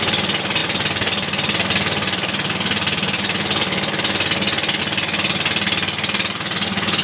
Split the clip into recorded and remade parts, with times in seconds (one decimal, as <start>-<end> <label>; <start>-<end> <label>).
0.0-7.0 recorded